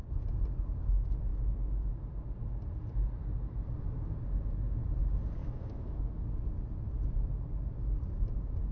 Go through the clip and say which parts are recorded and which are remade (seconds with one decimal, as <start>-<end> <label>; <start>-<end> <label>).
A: 0.0-5.4 recorded; 5.4-6.1 remade; 6.1-8.7 recorded